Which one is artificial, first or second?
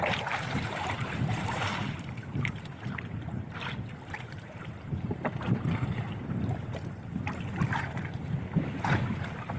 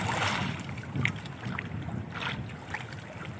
first